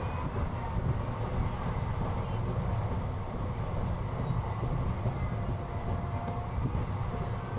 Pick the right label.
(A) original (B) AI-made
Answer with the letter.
A